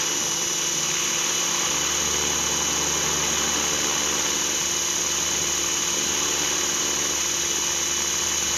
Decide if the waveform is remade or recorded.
recorded